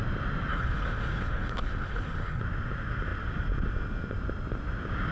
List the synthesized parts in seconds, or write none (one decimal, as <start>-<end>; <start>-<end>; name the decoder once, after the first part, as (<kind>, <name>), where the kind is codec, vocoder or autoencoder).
0.5-2.4 (codec, HILCodec)